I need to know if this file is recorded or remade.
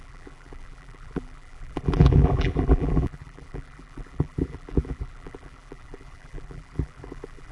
remade